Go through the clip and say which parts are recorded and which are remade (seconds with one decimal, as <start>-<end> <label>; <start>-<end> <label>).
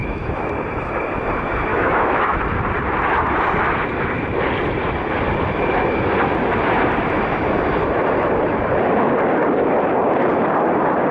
0.0-0.5 remade; 0.5-1.7 recorded; 1.7-2.4 remade; 2.4-11.1 recorded